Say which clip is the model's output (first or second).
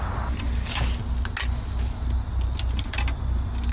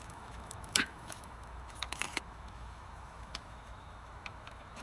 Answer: second